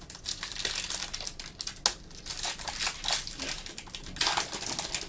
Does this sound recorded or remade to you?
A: recorded